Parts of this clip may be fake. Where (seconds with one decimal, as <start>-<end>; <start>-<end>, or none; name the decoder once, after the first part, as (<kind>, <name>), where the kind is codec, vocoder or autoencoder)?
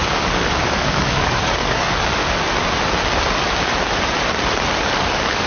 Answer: 0.0-2.2 (codec, DAC); 4.8-5.5